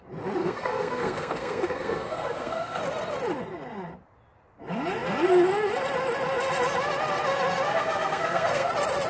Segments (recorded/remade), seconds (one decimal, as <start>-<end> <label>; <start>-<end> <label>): 0.0-0.4 recorded; 0.4-2.8 remade; 2.8-7.7 recorded; 7.7-8.7 remade; 8.7-9.1 recorded

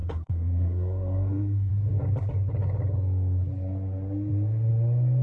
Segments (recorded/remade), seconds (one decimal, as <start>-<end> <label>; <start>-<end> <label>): 0.0-1.7 remade; 1.7-5.2 recorded

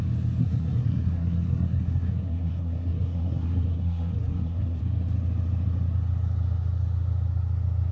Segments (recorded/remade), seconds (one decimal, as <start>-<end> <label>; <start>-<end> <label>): 0.0-0.4 recorded; 0.4-4.8 remade; 4.8-7.9 recorded

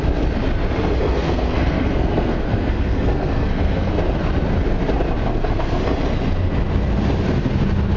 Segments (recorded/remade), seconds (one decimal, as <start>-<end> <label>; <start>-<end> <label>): 0.0-1.0 recorded; 1.0-3.9 remade; 3.9-5.3 recorded; 5.3-5.8 remade; 5.8-8.0 recorded

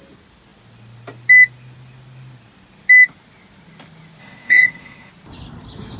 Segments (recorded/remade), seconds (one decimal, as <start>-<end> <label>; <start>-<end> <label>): 0.0-4.2 recorded; 4.2-5.1 remade; 5.1-6.0 recorded

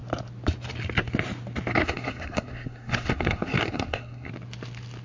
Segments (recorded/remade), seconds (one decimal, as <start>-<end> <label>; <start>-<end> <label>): 0.0-1.7 recorded; 1.7-4.3 remade; 4.3-5.0 recorded

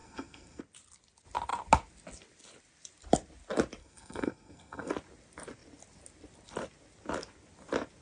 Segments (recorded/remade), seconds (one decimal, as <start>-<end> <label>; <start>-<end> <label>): 0.0-0.6 remade; 0.6-3.8 recorded; 3.8-4.9 remade; 4.9-8.0 recorded